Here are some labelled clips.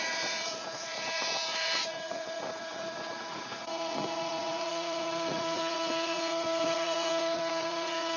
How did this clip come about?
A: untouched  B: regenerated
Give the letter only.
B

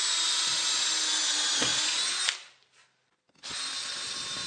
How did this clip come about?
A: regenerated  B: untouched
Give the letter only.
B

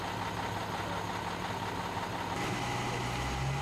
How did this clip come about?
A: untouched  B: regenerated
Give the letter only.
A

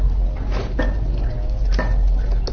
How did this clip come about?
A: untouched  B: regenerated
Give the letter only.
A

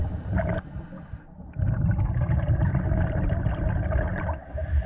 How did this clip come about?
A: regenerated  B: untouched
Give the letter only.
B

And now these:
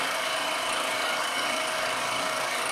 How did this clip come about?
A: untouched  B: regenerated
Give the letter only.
B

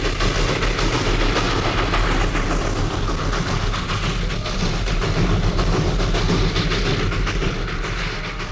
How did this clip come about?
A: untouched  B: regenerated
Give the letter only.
A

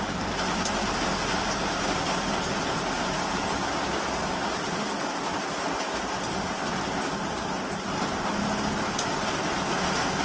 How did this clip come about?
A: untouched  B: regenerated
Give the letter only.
A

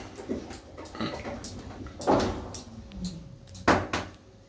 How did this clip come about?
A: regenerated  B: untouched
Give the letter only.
B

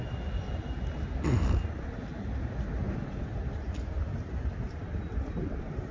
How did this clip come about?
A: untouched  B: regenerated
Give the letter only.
A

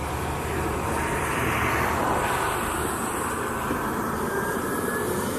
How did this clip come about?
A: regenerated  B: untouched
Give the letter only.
A